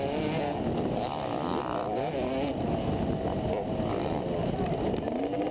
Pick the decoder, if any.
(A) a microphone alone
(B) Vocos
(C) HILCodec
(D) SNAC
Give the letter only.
A